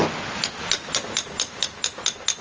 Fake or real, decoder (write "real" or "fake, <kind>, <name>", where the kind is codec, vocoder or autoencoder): real